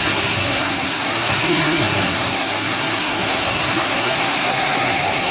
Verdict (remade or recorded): remade